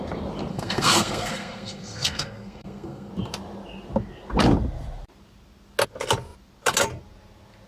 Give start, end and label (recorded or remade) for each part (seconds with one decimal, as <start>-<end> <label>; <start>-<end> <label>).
0.0-0.5 recorded; 0.5-3.1 remade; 3.1-7.7 recorded